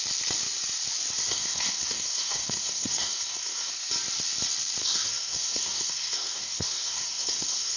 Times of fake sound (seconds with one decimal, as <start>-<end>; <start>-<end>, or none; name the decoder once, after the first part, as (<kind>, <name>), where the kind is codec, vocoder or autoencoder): 1.2-3.7 (codec, SNAC); 4.8-7.8